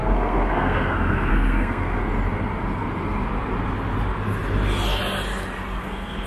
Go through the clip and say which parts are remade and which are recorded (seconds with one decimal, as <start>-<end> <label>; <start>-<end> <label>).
0.0-2.0 remade; 2.0-5.8 recorded; 5.8-6.3 remade